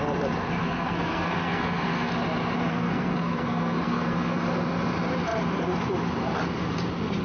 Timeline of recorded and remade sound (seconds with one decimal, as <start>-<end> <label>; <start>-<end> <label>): 0.0-0.6 recorded; 0.6-2.1 remade; 2.1-2.7 recorded; 2.7-4.4 remade; 4.4-7.2 recorded